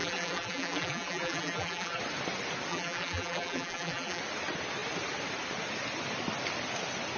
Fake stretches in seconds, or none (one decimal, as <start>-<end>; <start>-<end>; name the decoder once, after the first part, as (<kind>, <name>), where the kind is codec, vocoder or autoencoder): 0.0-2.0 (vocoder, BigVGAN v2); 2.7-4.2